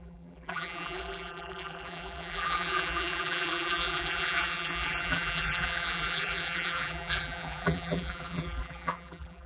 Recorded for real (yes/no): no